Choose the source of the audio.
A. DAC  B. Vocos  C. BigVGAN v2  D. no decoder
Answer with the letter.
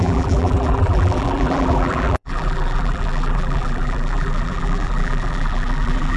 C